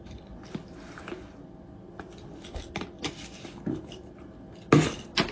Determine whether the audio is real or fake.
real